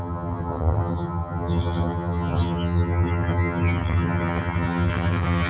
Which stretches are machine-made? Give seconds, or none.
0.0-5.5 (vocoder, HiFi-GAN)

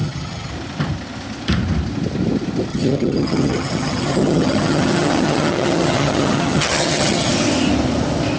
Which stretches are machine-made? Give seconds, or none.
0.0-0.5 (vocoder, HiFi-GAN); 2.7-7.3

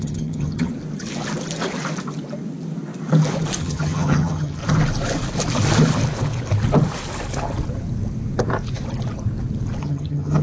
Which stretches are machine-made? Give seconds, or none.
0.0-0.7 (vocoder, HiFi-GAN); 3.6-4.6; 9.8-10.4